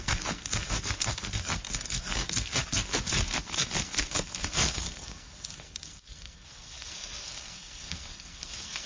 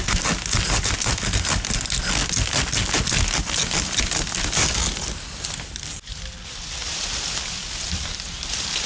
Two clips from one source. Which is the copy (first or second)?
first